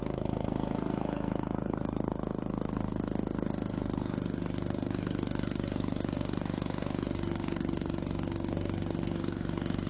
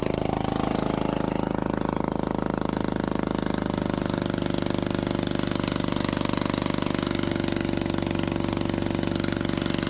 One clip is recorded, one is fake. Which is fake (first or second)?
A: first